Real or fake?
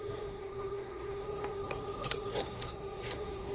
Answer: fake